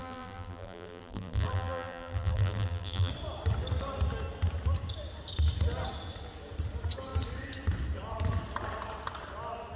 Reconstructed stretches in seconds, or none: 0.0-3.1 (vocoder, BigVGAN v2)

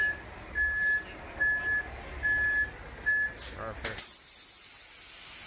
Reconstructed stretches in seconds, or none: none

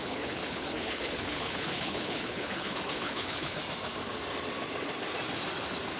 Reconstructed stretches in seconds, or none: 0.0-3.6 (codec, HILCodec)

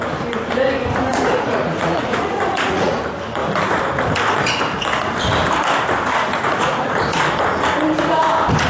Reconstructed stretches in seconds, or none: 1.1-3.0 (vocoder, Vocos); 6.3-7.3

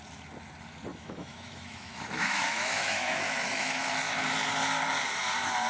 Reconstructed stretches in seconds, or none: 0.9-3.9 (autoencoder, DAC-VAE)

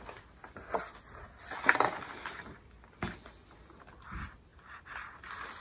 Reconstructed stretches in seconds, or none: 4.5-5.1 (vocoder, BigVGAN v2)

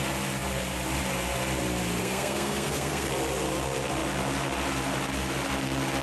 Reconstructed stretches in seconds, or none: 2.0-3.1 (codec, SNAC)

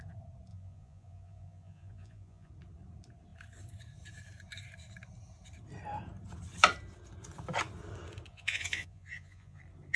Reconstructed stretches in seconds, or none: 0.5-2.5 (vocoder, Vocos); 8.3-9.6